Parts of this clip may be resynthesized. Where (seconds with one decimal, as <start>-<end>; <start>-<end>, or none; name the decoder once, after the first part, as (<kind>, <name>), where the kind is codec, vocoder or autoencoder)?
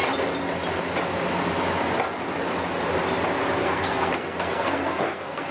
3.6-5.5 (codec, SNAC)